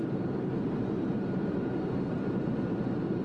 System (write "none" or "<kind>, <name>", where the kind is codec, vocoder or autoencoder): vocoder, BigVGAN v2